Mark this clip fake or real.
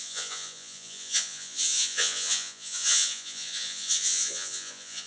fake